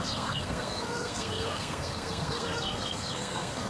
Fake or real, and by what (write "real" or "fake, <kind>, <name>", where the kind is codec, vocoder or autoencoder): fake, codec, SNAC